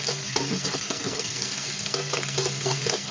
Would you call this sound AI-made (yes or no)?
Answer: yes